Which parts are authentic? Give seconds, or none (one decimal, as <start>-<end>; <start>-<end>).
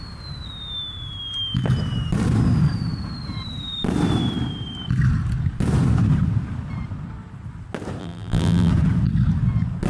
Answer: 0.0-8.0; 8.7-9.9